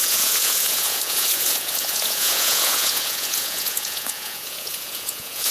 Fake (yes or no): yes